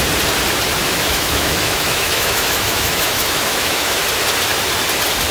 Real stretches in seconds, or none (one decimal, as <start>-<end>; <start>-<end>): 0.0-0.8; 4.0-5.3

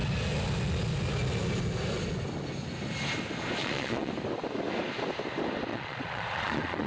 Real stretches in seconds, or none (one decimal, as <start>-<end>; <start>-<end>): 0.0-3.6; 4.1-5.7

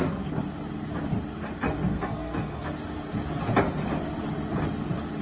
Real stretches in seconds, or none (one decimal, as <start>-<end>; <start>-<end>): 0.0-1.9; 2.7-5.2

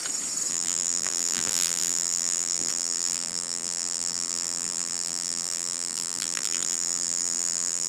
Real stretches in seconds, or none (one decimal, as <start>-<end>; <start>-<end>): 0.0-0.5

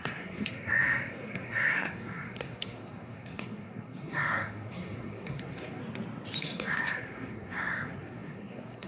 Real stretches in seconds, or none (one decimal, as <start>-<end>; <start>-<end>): 5.8-6.4

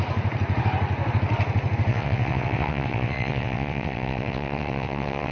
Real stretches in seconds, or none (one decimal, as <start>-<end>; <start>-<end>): 0.0-1.9

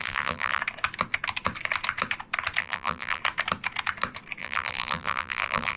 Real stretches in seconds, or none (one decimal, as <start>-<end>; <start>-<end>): 0.6-2.6; 3.2-4.4